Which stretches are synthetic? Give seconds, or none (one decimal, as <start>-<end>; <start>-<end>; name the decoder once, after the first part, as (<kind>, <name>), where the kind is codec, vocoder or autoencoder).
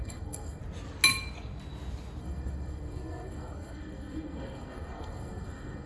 0.0-0.6 (codec, SNAC); 2.2-5.9